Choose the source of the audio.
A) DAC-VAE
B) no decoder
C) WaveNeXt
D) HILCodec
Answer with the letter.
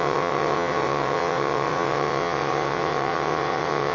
C